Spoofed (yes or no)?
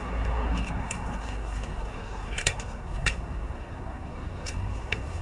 yes